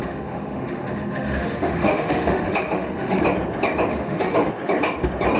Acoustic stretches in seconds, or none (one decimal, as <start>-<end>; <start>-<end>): 3.2-3.9; 4.5-5.4